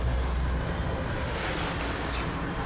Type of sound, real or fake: real